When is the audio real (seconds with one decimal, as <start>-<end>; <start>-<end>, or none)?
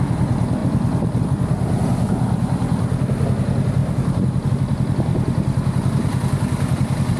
0.0-0.6; 1.2-3.8; 4.5-7.2